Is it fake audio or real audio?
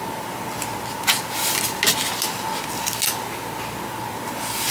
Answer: real